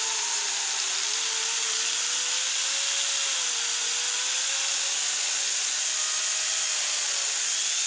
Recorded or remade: recorded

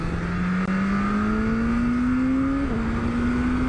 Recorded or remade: recorded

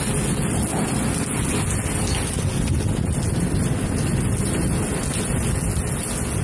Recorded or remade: recorded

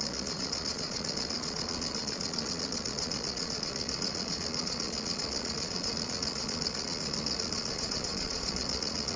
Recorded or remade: remade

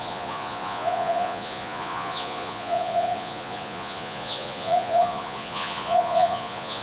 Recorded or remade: remade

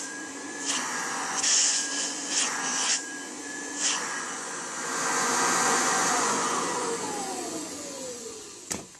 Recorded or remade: remade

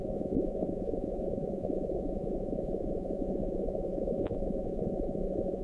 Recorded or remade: remade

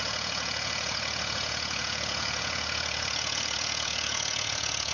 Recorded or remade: remade